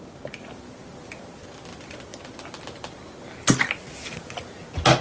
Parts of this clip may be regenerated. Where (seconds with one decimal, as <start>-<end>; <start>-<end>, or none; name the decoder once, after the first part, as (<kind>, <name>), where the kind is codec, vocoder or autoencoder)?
none